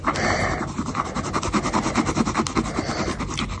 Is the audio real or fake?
real